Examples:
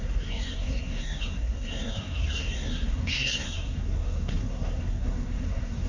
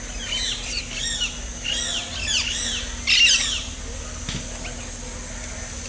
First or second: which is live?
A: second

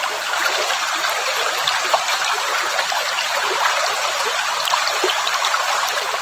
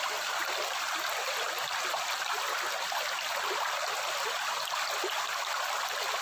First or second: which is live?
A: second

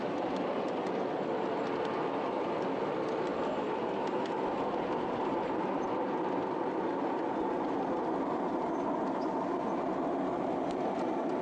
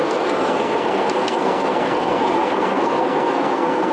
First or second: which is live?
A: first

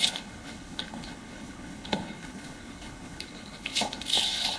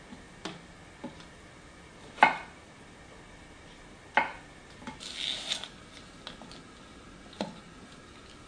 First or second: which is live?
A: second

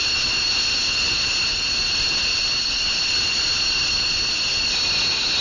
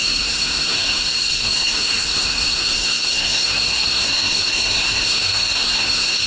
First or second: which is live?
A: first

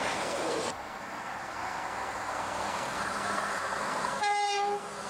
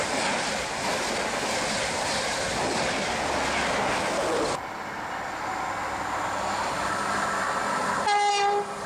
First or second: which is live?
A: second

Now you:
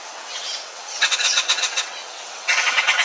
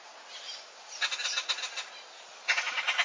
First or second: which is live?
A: second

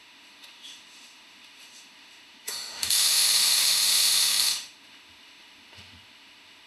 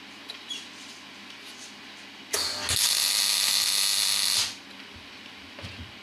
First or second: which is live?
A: second